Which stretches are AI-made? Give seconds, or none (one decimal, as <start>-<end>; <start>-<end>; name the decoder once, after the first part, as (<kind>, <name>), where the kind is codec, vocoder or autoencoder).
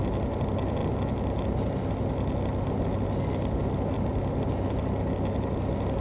none